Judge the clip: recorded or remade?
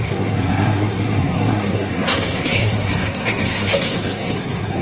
remade